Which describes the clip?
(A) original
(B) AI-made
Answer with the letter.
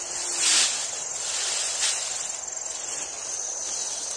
A